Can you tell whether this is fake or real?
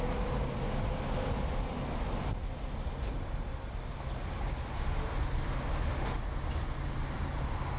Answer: real